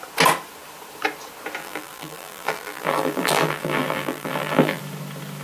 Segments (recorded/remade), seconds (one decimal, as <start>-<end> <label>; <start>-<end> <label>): 0.0-1.6 recorded; 1.6-4.8 remade; 4.8-5.4 recorded